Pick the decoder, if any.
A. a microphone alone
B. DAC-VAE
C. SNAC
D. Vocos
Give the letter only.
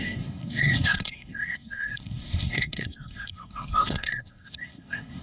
C